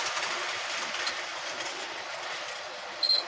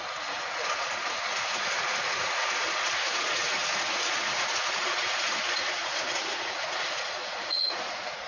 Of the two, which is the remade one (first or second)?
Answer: second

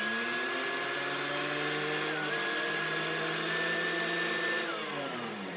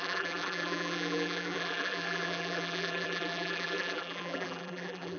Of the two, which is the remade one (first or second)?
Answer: second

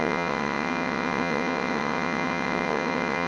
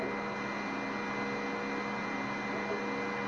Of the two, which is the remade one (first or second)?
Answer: first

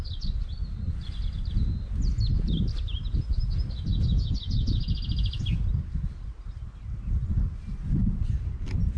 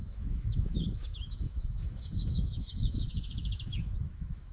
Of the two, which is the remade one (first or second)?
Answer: second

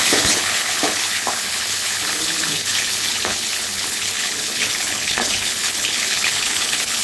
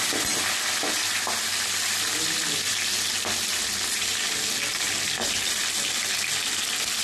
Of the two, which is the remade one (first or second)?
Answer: first